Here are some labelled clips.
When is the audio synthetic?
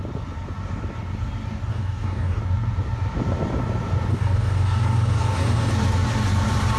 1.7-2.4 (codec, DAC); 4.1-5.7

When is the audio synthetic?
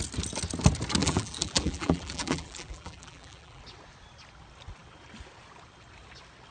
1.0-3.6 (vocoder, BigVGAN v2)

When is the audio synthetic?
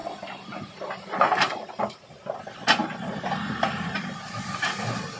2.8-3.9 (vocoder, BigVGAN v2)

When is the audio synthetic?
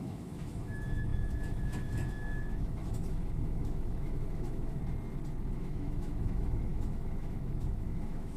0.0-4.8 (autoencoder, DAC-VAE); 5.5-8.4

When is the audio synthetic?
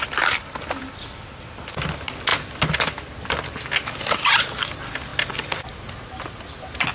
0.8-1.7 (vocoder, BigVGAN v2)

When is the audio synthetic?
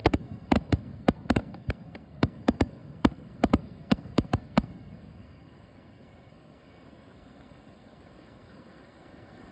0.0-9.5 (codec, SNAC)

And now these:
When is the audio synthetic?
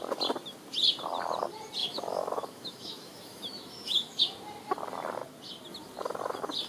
1.8-4.2 (autoencoder, DAC-VAE)